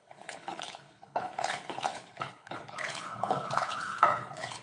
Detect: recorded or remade remade